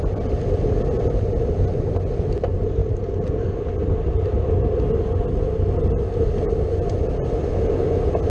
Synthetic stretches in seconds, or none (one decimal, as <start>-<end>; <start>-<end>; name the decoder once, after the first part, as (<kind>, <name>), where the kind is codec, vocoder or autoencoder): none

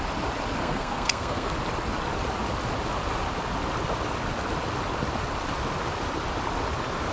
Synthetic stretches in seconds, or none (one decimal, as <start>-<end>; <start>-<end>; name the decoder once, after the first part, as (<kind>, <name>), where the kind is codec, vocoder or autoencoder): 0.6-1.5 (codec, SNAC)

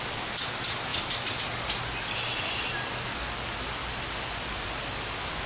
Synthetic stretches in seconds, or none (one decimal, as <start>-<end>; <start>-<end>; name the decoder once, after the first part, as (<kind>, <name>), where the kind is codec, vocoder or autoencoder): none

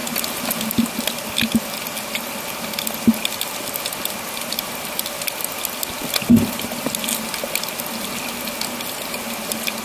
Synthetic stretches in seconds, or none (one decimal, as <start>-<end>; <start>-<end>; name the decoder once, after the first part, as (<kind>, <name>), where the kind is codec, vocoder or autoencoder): none

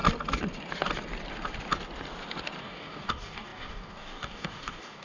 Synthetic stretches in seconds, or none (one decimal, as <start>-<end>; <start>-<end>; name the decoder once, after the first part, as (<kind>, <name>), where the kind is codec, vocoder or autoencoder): 2.6-5.0 (codec, DAC)